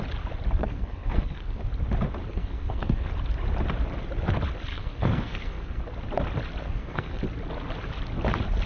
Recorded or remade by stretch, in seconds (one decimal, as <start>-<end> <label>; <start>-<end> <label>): 0.0-0.6 recorded; 0.6-1.6 remade; 1.6-2.2 recorded; 2.2-3.1 remade; 3.1-4.7 recorded; 4.7-5.8 remade; 5.8-6.6 recorded; 6.6-7.2 remade; 7.2-8.7 recorded